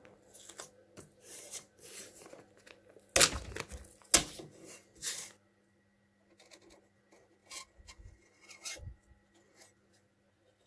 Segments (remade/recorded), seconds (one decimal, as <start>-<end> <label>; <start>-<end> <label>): 0.0-0.8 recorded; 0.8-2.3 remade; 2.3-10.7 recorded